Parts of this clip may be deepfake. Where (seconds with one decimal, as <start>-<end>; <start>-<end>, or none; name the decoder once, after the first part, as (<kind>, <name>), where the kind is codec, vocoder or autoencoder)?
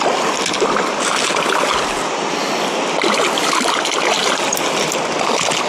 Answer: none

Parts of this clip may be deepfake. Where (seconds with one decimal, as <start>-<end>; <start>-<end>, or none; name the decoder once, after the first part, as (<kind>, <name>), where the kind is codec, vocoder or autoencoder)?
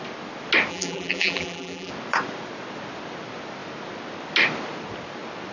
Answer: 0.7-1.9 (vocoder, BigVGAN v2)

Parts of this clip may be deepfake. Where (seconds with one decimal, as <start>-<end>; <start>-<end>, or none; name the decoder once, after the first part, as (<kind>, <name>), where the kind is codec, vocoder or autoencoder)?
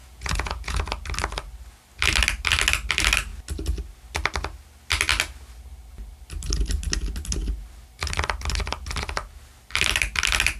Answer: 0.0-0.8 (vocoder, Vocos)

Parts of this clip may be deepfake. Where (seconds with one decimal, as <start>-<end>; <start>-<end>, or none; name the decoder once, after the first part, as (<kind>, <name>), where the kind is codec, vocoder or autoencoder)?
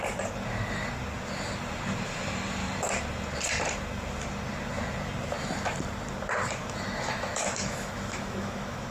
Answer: 6.6-8.9 (autoencoder, DAC-VAE)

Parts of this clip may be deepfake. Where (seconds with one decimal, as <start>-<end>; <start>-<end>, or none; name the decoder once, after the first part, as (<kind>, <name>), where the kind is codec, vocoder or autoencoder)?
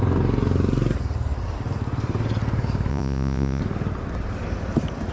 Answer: 2.9-3.6 (vocoder, Vocos)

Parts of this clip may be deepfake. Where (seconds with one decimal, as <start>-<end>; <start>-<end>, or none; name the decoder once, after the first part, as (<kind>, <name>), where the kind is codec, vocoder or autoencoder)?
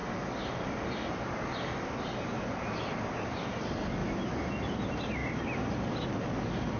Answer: 3.4-4.0 (vocoder, BigVGAN v2); 4.5-5.2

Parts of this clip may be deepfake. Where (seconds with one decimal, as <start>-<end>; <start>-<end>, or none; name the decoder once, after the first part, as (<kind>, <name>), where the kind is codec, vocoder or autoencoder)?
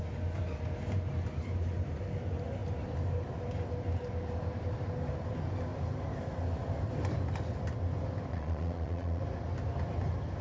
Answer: 8.3-9.2 (vocoder, Vocos)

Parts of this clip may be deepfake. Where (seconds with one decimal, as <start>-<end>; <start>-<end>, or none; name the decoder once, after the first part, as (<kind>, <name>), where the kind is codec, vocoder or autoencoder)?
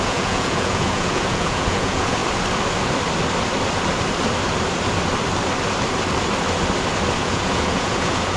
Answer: 0.0-2.2 (vocoder, Vocos); 7.2-8.4